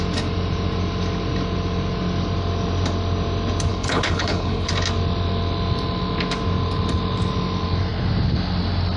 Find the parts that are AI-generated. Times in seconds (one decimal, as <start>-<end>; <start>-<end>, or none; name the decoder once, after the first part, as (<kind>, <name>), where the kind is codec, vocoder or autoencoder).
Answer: 3.7-4.7 (codec, HILCodec)